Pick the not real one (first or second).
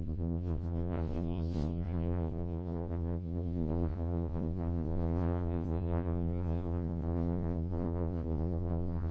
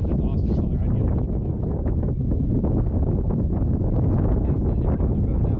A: first